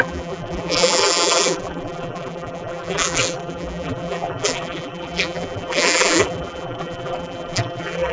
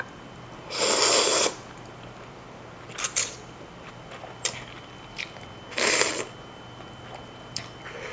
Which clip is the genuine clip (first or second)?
second